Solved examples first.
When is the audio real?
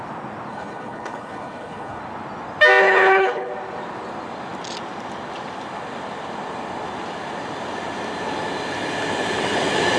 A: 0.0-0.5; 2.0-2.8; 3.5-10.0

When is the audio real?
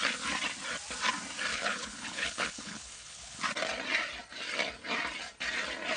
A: 0.0-1.5; 3.4-6.0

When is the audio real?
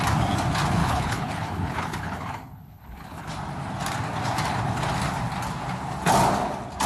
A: 0.0-0.8; 3.3-6.9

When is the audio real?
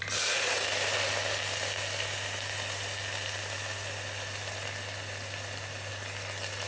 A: 0.0-6.7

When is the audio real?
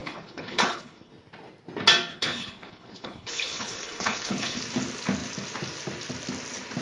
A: 1.1-2.1; 4.6-6.8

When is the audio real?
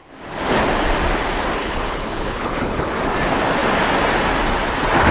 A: 0.0-1.6; 3.0-5.1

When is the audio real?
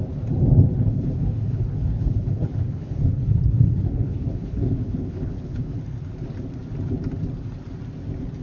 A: 0.0-0.7; 5.7-8.4